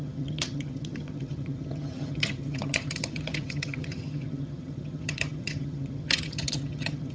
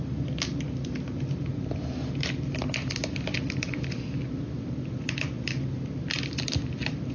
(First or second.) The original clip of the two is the second